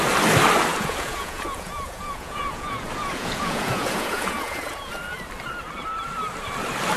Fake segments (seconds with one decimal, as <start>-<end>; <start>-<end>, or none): 0.7-4.9